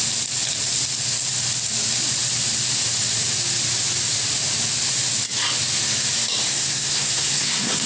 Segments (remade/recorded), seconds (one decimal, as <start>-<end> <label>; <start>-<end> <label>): 0.0-6.5 recorded; 6.5-7.9 remade

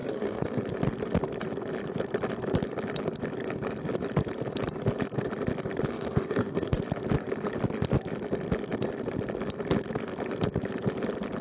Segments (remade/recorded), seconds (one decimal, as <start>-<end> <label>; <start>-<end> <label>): 0.0-0.6 remade; 0.6-5.9 recorded; 5.9-6.8 remade; 6.8-11.4 recorded